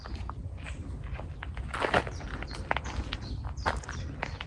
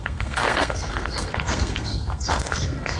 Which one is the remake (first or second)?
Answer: second